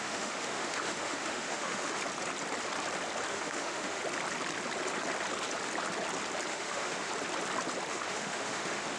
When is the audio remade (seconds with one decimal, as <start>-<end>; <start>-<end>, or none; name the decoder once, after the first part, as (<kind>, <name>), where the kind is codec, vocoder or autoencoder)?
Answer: 0.0-2.0 (autoencoder, DAC-VAE); 3.3-4.0; 6.5-7.1; 7.9-9.0